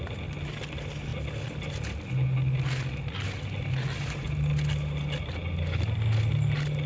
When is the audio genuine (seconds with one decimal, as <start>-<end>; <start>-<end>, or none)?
0.0-6.9